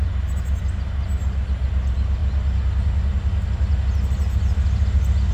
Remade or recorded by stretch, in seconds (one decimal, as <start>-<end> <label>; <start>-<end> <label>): 0.0-5.3 recorded